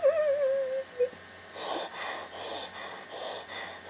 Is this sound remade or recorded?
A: recorded